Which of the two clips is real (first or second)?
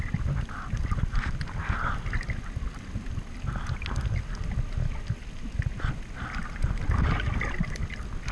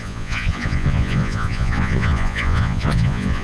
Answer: first